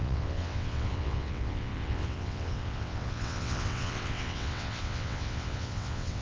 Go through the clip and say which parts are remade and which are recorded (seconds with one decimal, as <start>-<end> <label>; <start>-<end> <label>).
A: 0.0-6.2 remade